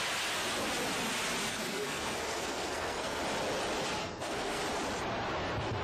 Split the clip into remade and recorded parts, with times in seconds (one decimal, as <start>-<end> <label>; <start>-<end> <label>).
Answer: 0.0-1.5 recorded; 1.5-3.2 remade; 3.2-4.0 recorded; 4.0-4.6 remade; 4.6-5.8 recorded